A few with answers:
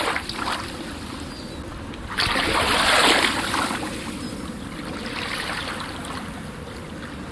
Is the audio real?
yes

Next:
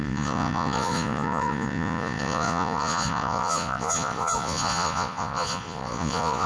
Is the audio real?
no